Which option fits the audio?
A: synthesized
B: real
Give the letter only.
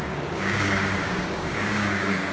A